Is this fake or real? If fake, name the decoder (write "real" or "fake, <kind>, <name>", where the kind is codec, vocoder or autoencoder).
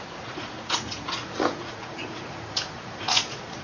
fake, vocoder, Vocos